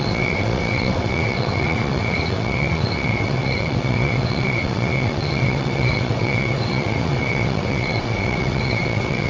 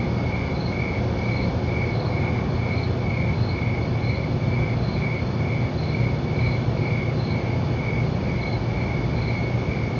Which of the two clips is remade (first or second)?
first